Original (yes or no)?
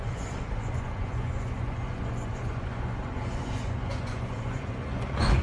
no